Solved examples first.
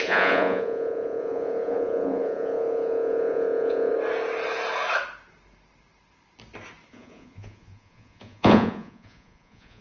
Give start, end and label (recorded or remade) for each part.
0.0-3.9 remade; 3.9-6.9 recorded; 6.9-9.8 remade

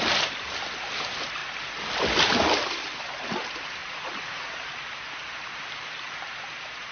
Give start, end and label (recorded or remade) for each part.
0.0-3.8 recorded; 3.8-4.8 remade; 4.8-6.9 recorded

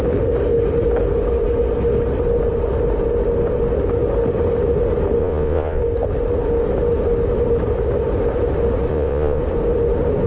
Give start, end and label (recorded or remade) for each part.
0.0-5.2 recorded; 5.2-5.8 remade; 5.8-8.9 recorded; 8.9-9.4 remade; 9.4-10.3 recorded

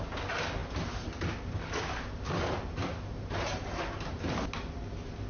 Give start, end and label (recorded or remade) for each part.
0.0-5.3 recorded